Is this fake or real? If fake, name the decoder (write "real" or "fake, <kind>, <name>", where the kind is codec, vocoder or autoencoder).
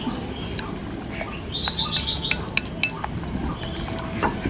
real